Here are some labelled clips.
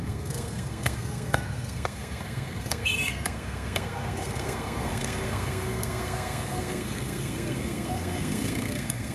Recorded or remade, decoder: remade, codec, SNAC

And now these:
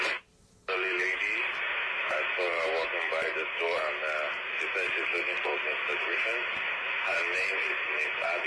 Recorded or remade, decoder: recorded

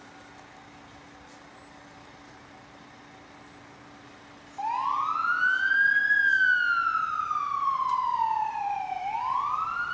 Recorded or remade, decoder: recorded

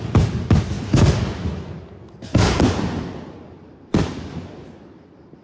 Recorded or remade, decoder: recorded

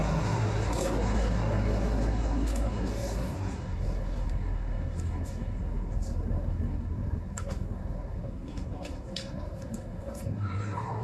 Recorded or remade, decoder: remade, codec, SNAC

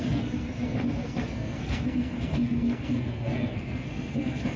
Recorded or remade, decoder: remade, codec, SNAC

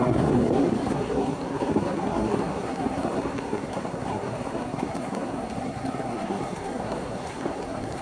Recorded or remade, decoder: remade, codec, SNAC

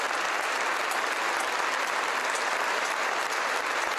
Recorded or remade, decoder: recorded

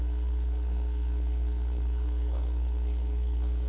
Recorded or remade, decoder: remade, codec, SNAC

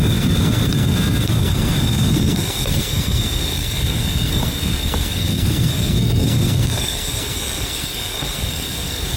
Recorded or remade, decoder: remade, codec, SNAC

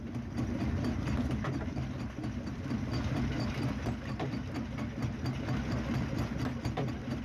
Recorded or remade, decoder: recorded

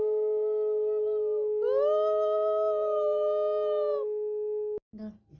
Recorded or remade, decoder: recorded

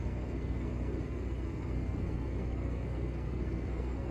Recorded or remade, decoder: remade, codec, SNAC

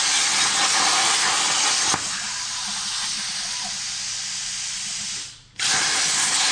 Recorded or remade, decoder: recorded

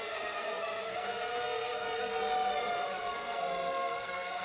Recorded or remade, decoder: remade, codec, SNAC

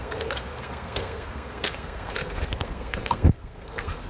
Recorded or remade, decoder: remade, codec, SNAC